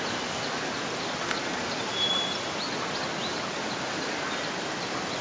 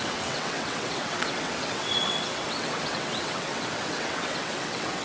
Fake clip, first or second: second